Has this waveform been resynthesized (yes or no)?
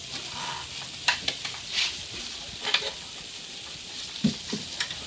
no